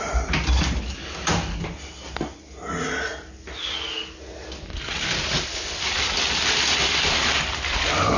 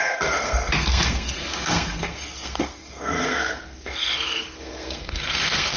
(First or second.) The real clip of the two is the first